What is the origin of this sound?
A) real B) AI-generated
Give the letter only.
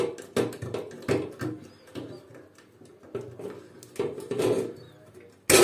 A